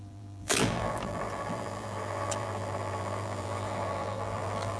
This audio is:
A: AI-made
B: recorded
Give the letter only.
A